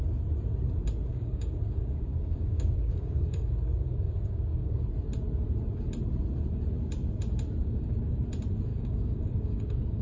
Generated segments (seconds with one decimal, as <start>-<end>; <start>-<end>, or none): 1.1-4.8; 7.6-8.2; 8.7-10.0